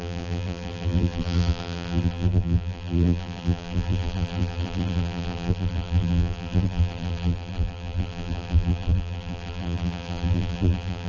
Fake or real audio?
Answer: fake